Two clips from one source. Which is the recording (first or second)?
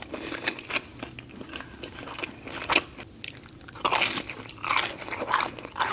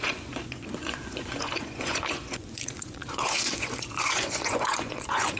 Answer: first